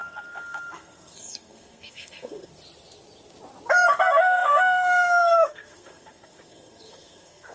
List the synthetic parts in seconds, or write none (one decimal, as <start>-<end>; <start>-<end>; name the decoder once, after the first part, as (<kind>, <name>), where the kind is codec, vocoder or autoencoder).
0.0-2.5 (codec, SNAC); 4.0-7.5